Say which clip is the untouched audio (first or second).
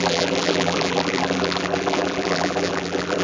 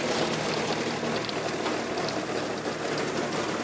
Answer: second